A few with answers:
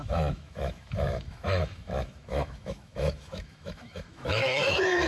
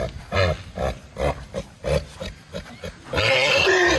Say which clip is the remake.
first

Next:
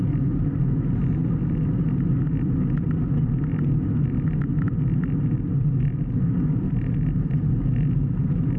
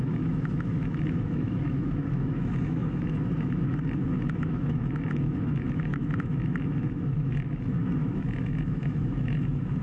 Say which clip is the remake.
second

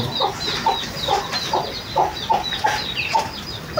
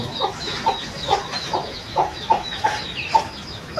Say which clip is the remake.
second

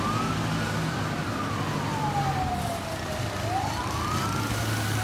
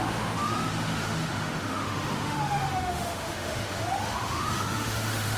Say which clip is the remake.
second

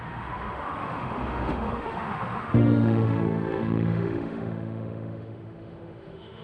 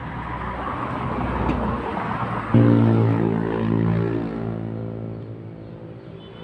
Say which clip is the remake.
first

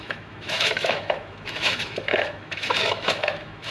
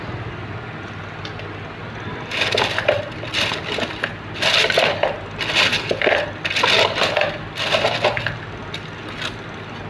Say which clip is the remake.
first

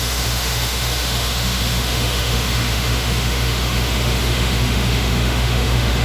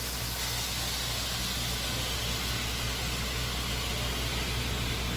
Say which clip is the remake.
first